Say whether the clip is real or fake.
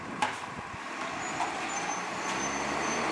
real